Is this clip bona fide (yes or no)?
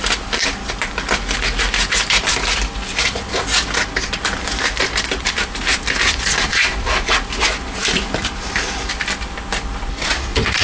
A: yes